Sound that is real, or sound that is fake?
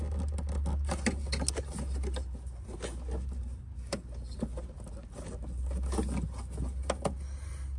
real